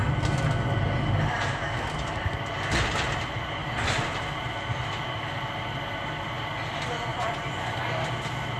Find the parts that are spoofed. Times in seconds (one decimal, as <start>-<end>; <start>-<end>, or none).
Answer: 7.1-7.7